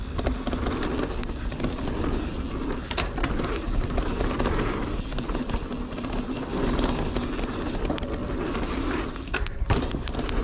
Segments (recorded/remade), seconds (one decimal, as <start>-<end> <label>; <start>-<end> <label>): 0.0-10.4 recorded

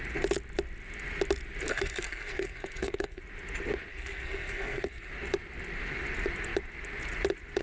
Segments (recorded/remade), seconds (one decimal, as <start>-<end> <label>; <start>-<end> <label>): 0.0-1.7 recorded; 1.7-3.2 remade; 3.2-3.9 recorded; 3.9-5.1 remade; 5.1-7.6 recorded

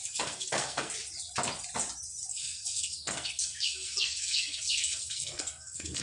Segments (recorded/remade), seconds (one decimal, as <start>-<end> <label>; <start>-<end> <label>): 0.0-0.9 remade; 0.9-2.3 recorded; 2.3-6.0 remade

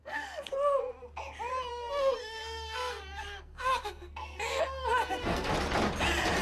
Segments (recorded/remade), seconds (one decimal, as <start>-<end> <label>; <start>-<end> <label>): 0.0-0.5 remade; 0.5-1.7 recorded; 1.7-5.5 remade; 5.5-6.4 recorded